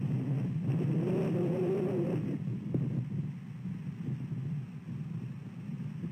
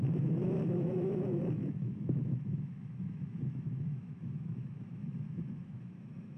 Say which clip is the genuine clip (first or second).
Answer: first